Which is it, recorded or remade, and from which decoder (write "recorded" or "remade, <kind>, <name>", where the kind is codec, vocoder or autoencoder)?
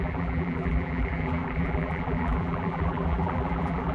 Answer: remade, vocoder, BigVGAN v2